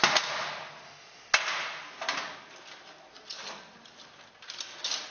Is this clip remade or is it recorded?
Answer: recorded